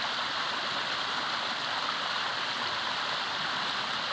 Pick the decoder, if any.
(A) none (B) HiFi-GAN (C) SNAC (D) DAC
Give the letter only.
A